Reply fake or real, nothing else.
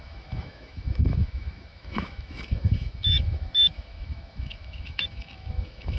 fake